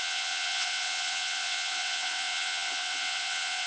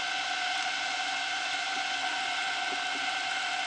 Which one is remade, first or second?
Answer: first